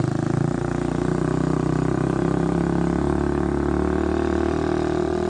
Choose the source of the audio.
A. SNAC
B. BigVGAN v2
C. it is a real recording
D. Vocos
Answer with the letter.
C